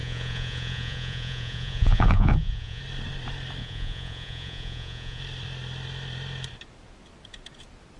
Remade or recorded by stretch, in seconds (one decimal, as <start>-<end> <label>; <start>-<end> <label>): 0.0-2.8 remade; 2.8-3.6 recorded; 3.6-5.2 remade; 5.2-8.0 recorded